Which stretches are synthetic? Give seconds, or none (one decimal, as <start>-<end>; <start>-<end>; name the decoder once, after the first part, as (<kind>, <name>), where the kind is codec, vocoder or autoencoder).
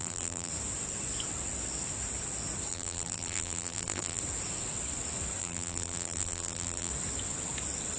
0.0-0.5 (vocoder, BigVGAN v2); 2.7-4.2; 5.4-6.9